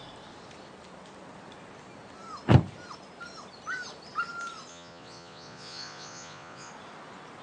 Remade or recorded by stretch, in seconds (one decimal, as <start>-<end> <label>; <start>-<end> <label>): 0.0-4.7 recorded; 4.7-6.7 remade; 6.7-7.4 recorded